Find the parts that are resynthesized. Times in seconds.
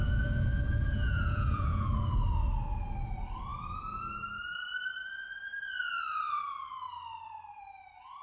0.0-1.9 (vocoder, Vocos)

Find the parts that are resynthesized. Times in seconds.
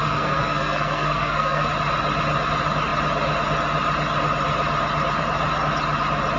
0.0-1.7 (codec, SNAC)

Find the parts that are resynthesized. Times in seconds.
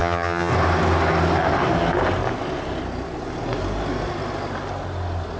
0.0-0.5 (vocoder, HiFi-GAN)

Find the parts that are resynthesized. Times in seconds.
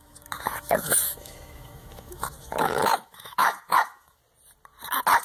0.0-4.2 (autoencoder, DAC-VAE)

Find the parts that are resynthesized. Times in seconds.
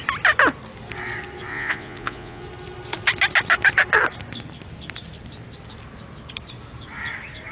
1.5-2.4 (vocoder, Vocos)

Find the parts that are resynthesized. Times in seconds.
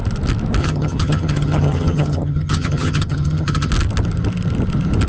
0.6-3.7 (vocoder, HiFi-GAN)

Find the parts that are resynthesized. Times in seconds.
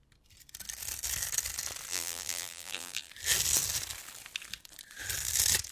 1.9-3.1 (vocoder, BigVGAN v2)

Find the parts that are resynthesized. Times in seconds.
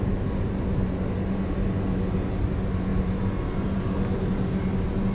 none